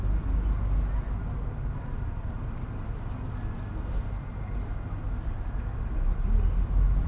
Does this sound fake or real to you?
real